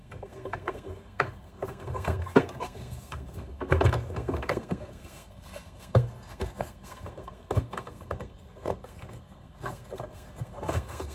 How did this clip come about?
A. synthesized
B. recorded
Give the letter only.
A